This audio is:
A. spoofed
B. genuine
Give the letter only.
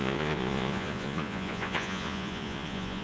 A